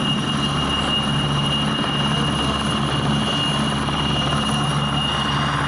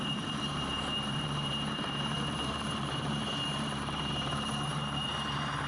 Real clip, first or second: first